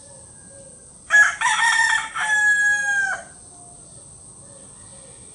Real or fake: real